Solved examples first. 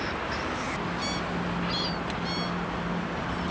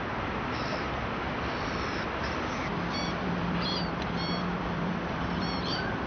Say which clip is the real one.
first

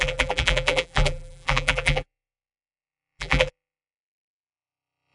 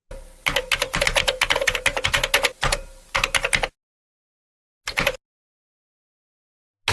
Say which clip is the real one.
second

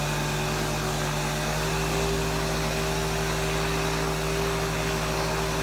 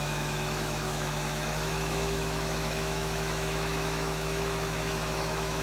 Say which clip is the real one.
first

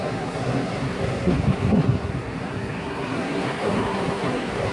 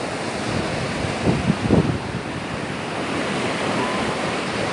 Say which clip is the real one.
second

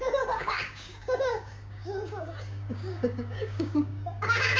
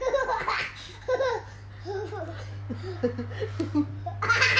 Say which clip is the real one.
second